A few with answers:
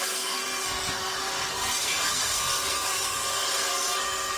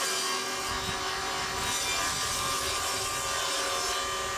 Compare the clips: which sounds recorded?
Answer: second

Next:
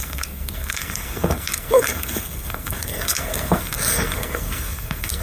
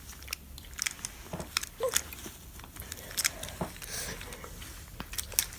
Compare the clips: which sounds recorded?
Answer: second